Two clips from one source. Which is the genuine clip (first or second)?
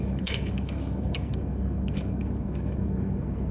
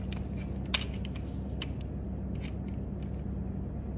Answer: second